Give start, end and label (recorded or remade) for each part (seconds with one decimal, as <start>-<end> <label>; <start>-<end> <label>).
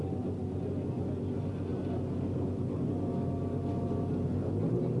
0.0-5.0 recorded